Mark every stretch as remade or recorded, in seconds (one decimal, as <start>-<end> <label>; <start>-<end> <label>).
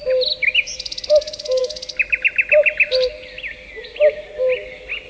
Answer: 0.0-5.1 recorded